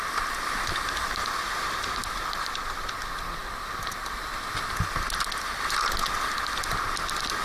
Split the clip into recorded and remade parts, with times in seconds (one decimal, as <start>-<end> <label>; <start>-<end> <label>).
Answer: 0.0-1.0 recorded; 1.0-1.8 remade; 1.8-7.4 recorded